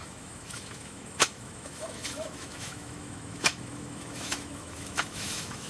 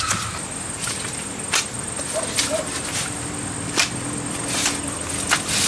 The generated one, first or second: first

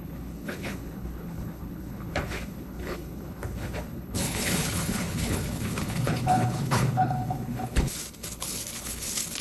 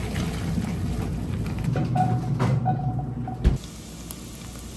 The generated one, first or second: first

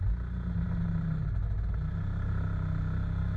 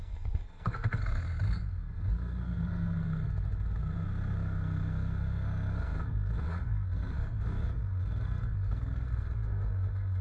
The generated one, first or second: second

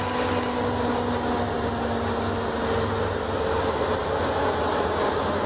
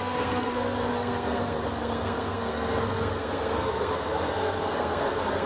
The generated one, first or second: second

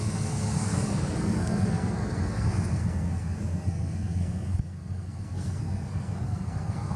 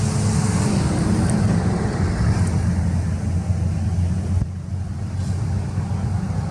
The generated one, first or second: first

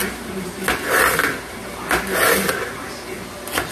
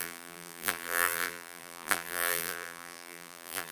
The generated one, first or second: second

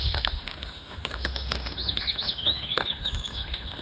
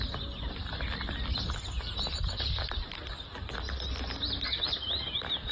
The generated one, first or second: first